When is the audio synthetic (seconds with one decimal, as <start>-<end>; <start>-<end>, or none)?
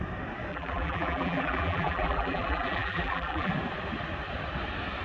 0.5-3.5